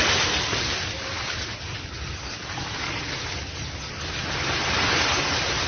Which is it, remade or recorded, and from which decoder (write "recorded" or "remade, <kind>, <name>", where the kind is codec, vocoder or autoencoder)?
recorded